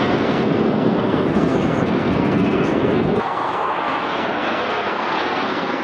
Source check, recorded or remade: remade